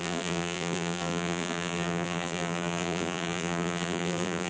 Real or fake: fake